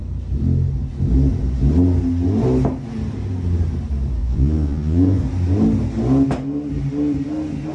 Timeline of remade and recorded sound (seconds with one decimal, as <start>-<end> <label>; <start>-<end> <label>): 0.0-4.2 recorded; 4.2-5.2 remade; 5.2-7.7 recorded